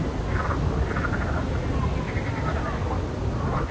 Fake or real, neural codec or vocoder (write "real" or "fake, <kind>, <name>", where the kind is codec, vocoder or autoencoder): real